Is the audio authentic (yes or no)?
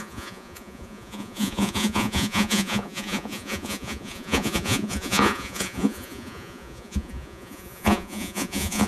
no